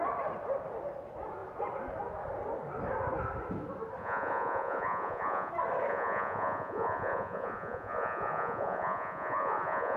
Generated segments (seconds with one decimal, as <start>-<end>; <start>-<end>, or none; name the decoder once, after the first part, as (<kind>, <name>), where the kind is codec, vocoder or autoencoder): 4.0-5.5 (vocoder, Vocos); 5.9-10.0